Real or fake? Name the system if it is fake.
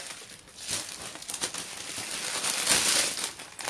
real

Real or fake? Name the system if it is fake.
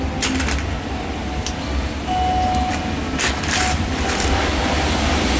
real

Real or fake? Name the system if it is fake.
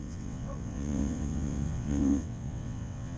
fake, vocoder, WaveNeXt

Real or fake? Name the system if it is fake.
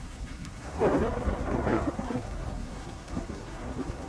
fake, codec, SNAC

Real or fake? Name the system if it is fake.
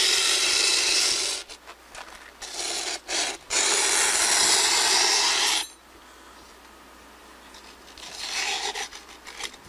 real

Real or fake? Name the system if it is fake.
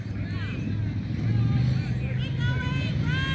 real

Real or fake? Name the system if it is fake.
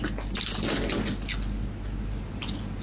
real